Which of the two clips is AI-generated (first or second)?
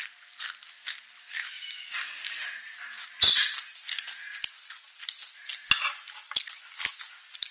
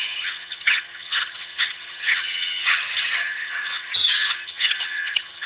second